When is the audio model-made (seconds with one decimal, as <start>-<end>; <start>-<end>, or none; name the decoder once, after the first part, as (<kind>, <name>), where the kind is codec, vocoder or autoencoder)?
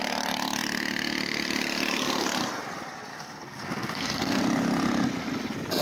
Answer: 3.1-4.4 (codec, SNAC)